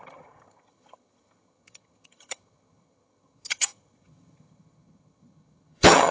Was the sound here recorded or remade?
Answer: remade